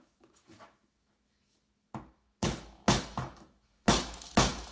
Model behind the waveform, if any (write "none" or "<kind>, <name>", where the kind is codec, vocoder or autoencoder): autoencoder, DAC-VAE